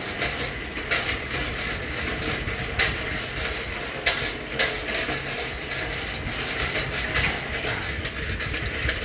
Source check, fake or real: real